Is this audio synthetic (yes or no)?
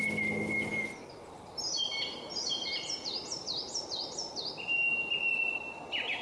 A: no